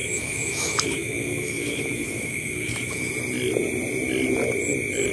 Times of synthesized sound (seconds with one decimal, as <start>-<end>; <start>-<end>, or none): 0.0-3.1